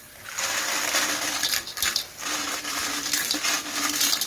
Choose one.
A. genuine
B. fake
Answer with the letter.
A